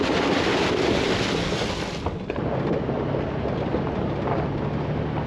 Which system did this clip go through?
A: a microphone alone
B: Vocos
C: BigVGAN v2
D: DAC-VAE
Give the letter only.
A